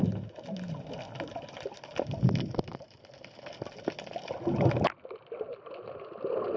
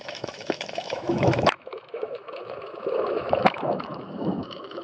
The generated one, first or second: second